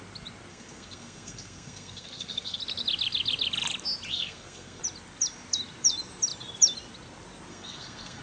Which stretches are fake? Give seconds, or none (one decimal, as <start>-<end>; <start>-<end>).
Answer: 0.5-2.6; 4.1-4.8; 7.5-8.2